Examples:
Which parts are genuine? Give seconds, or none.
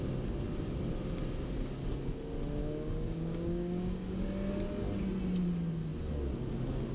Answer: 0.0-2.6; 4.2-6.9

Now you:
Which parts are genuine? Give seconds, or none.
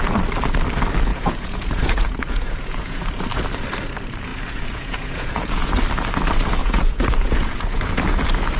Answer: 0.0-1.1; 3.0-4.3; 5.7-6.6; 7.9-8.6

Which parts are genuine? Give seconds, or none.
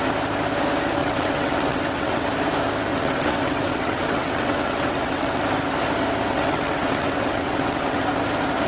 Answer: 0.0-1.0; 2.3-2.9; 5.4-6.3; 8.0-8.7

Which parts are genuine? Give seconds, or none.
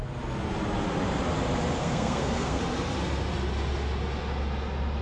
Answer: 0.0-1.8; 2.6-5.0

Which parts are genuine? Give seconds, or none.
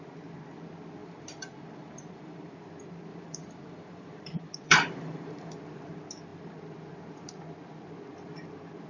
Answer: 0.0-1.0; 2.5-3.1; 5.5-8.9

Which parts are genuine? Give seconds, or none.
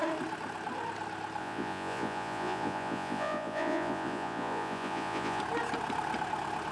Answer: 0.0-1.4; 5.4-6.7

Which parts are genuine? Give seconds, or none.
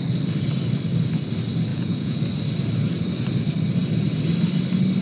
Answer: 0.0-1.7; 2.2-5.0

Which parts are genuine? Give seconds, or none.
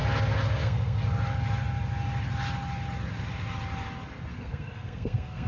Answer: 0.0-0.6; 1.0-4.3